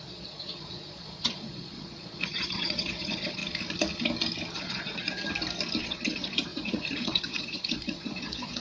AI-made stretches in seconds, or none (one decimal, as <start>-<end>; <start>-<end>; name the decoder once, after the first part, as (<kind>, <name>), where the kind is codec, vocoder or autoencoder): 0.0-3.4 (vocoder, Vocos); 4.6-5.2; 5.8-8.6